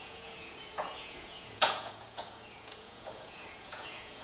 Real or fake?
fake